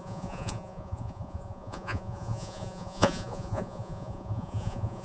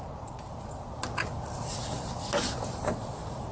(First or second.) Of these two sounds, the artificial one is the first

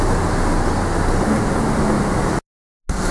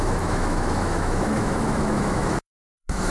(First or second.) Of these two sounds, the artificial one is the second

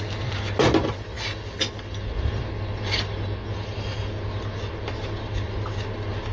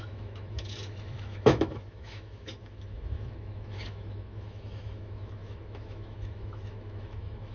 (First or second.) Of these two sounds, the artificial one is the second